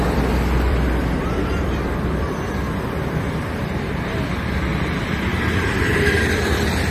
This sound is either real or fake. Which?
fake